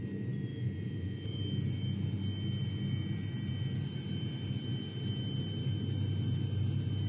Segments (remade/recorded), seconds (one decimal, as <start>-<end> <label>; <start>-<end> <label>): 0.0-0.5 recorded; 0.5-1.4 remade; 1.4-7.1 recorded